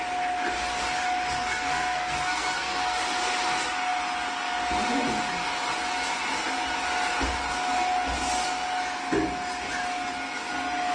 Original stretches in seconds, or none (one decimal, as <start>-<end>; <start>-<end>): 0.0-1.4; 3.0-10.9